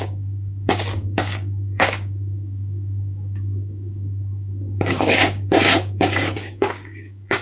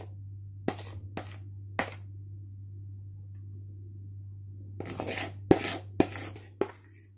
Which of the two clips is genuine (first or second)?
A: second